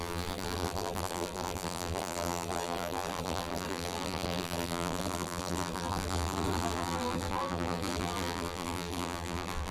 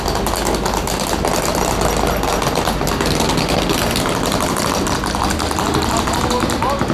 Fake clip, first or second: first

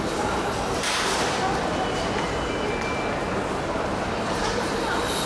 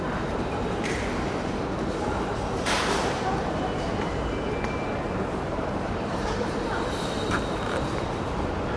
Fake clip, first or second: second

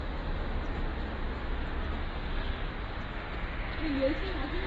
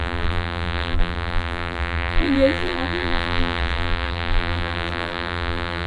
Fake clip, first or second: second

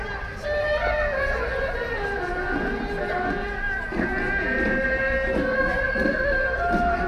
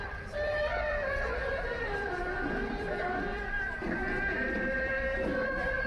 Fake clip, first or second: second